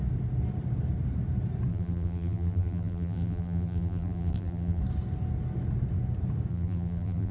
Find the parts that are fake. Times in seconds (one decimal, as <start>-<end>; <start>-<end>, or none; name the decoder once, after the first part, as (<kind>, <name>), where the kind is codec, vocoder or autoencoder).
1.7-4.8 (vocoder, BigVGAN v2); 6.5-7.3